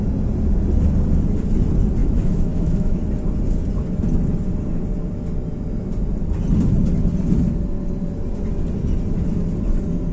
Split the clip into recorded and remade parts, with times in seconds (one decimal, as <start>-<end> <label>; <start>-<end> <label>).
0.0-2.0 recorded; 2.0-3.0 remade; 3.0-10.1 recorded